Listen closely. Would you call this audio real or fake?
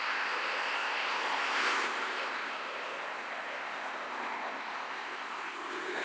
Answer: fake